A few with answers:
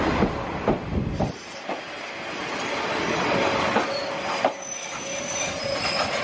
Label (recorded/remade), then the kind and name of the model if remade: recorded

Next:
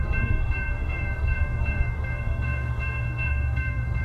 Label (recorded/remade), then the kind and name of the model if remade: remade, codec, SNAC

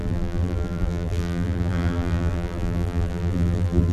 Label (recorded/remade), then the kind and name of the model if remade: remade, vocoder, BigVGAN v2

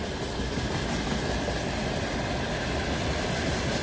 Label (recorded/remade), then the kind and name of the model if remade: recorded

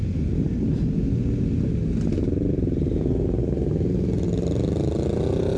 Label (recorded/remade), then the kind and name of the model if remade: recorded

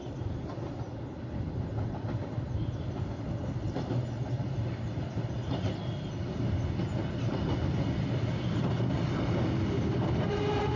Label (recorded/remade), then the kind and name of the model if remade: recorded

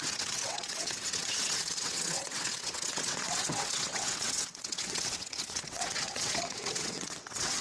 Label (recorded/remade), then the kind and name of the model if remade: remade, vocoder, WaveNeXt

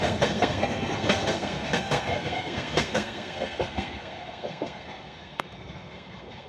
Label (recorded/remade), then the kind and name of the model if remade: remade, codec, SNAC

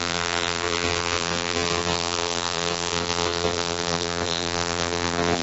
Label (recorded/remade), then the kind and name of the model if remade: remade, vocoder, BigVGAN v2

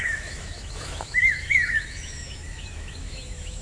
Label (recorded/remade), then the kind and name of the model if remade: remade, autoencoder, DAC-VAE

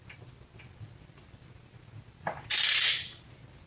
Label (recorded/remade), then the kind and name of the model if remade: recorded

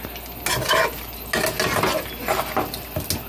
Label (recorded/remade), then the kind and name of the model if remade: recorded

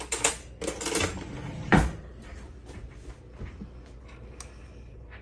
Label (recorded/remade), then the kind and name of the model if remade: recorded